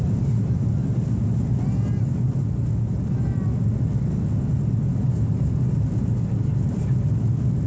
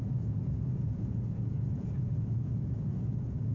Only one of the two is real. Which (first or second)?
first